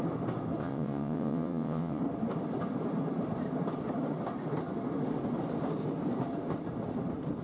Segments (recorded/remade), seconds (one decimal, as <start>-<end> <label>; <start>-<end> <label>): 0.0-0.6 recorded; 0.6-2.0 remade; 2.0-7.4 recorded